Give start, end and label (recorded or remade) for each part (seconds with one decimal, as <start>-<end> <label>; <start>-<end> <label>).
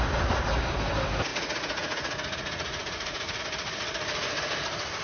0.0-1.3 recorded; 1.3-3.4 remade; 3.4-5.0 recorded